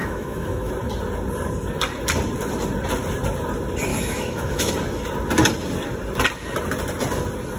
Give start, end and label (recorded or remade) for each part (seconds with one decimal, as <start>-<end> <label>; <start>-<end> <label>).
0.0-0.7 remade; 0.7-3.9 recorded; 3.9-4.7 remade; 4.7-7.6 recorded